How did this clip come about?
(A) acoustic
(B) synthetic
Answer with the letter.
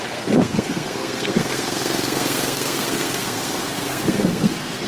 B